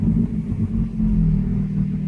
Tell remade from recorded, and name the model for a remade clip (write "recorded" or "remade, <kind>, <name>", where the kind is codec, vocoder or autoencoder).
recorded